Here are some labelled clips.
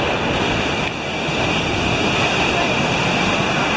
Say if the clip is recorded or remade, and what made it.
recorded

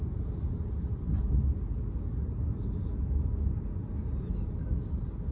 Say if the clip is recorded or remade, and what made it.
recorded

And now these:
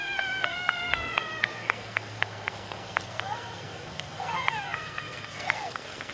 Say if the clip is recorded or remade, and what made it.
remade, codec, SNAC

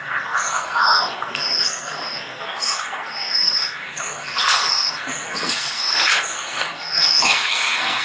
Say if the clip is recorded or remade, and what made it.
remade, codec, SNAC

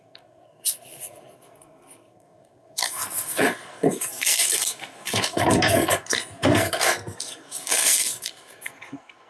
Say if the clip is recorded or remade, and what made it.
remade, codec, SNAC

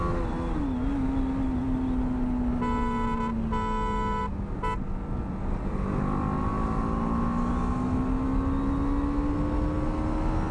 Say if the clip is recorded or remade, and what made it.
recorded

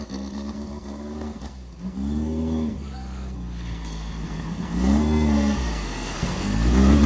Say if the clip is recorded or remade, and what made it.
remade, codec, SNAC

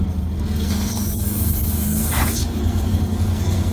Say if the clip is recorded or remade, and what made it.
remade, codec, SNAC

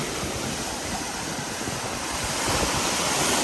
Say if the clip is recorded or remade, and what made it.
recorded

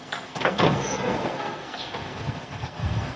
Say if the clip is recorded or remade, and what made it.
remade, codec, SNAC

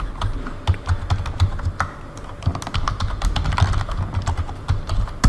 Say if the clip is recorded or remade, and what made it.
recorded